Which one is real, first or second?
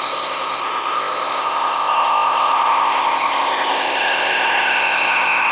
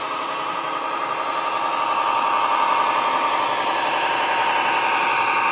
second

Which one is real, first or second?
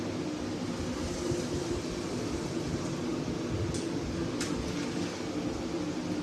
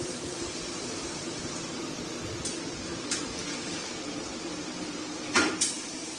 first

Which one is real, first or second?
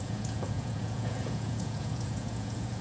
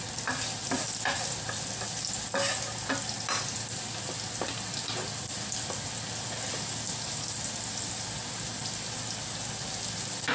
second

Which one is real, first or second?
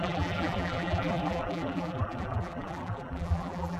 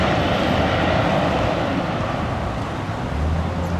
second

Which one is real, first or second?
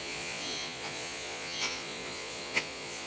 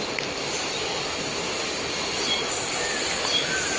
second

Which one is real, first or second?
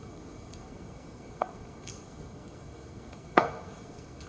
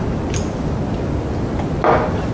second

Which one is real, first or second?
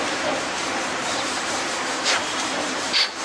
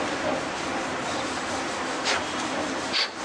second